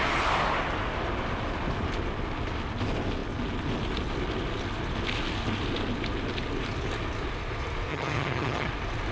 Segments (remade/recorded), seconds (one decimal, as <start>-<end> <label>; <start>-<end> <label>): 0.0-7.9 recorded; 7.9-8.7 remade; 8.7-9.1 recorded